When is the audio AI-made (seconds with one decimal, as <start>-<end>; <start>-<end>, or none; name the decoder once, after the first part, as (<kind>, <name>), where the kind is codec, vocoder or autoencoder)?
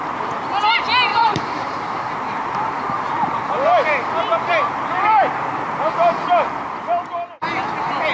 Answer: 1.1-3.3 (vocoder, BigVGAN v2)